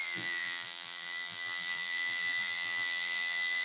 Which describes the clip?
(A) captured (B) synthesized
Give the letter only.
B